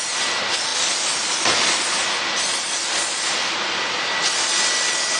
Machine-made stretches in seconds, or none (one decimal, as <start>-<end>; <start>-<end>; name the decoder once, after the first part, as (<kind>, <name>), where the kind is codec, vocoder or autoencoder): none